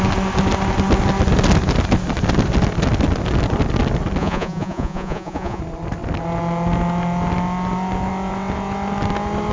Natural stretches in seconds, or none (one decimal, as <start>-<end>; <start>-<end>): 0.0-4.2; 5.6-9.5